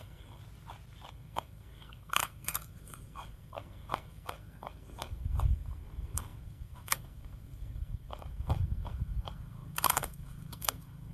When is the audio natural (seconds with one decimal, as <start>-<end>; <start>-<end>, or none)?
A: 0.4-1.1